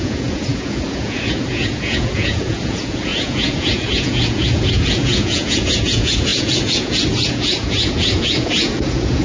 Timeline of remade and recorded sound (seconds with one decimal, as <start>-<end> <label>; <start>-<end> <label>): 0.0-9.2 remade